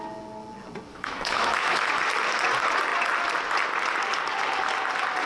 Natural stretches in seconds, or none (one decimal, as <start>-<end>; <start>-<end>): 0.0-0.9; 1.9-5.3